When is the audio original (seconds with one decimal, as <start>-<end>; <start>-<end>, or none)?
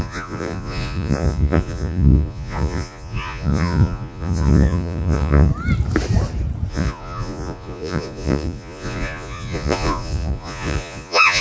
5.5-6.7